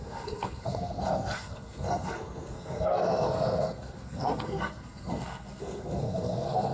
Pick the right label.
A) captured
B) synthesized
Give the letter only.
B